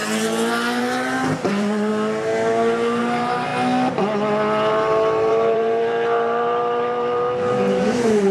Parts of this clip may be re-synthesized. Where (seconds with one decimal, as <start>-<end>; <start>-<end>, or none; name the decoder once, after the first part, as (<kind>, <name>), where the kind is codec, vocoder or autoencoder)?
0.8-1.9 (vocoder, BigVGAN v2); 3.0-3.5; 4.7-8.3